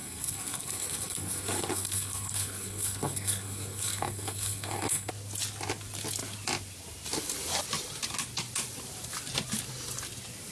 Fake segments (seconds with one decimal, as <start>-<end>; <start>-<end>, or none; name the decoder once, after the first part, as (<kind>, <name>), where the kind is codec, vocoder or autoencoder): 0.0-5.1 (codec, SNAC)